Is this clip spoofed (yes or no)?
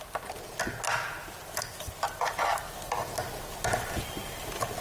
no